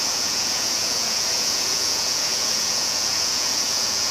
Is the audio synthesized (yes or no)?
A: yes